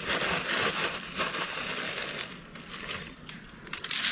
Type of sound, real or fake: real